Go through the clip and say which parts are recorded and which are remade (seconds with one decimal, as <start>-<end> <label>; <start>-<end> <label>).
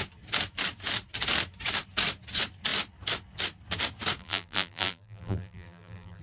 0.0-4.2 recorded; 4.2-6.2 remade